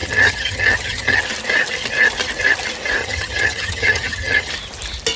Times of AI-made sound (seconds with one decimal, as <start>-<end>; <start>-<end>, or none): 0.0-1.2; 3.0-4.5